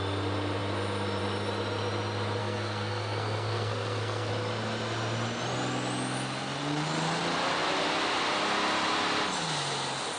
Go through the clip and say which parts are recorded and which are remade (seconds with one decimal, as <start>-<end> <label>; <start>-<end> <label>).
0.0-2.4 recorded; 2.4-4.3 remade; 4.3-10.2 recorded